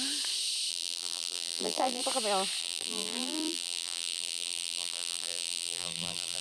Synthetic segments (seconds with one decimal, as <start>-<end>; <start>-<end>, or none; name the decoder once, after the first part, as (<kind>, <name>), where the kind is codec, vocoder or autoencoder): 0.7-2.0 (vocoder, BigVGAN v2); 2.6-6.4

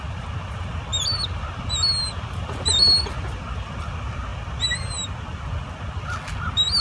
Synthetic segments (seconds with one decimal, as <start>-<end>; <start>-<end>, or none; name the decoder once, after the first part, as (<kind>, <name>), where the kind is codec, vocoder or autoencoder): none

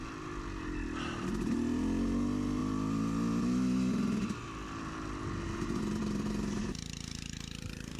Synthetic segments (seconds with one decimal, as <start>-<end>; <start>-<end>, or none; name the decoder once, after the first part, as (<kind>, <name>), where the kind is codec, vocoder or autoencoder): 6.6-8.0 (vocoder, BigVGAN v2)